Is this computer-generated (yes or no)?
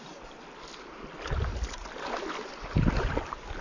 no